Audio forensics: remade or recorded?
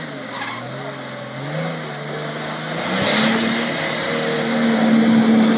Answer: recorded